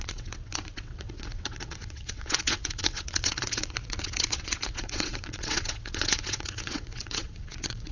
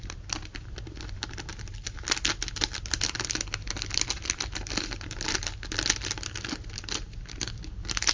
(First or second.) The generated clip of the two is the first